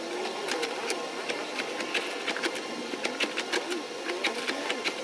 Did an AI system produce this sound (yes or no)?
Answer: no